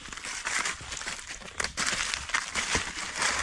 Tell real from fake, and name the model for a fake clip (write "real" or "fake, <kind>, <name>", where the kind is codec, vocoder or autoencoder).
real